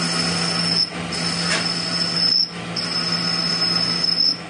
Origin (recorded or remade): recorded